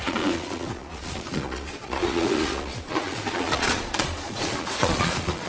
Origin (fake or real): fake